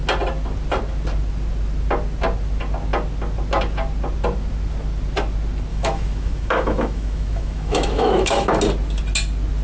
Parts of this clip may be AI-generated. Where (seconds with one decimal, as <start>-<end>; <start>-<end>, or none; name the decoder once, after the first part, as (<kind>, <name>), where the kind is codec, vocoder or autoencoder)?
5.7-8.6 (autoencoder, DAC-VAE)